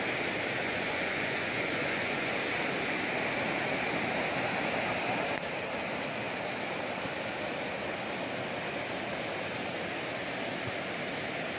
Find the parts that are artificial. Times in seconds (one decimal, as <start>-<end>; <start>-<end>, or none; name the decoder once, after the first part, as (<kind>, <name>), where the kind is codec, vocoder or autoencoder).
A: 0.6-2.4 (vocoder, Vocos)